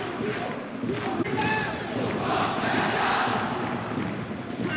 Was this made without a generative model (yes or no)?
yes